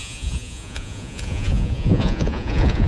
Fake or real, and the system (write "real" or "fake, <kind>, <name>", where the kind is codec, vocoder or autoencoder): fake, vocoder, Vocos